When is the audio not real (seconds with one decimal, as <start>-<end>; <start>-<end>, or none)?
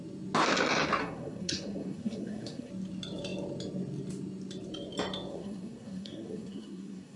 1.0-2.7; 5.3-7.2